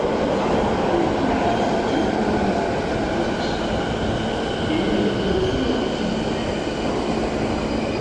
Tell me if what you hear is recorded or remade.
recorded